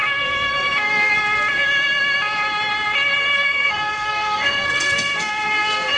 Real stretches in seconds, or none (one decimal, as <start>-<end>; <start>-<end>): 1.1-3.3